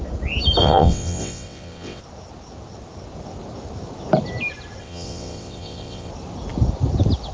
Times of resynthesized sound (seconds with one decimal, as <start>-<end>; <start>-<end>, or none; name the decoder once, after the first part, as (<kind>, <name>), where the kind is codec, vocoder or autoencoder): 0.6-2.0 (vocoder, WaveNeXt); 4.8-6.1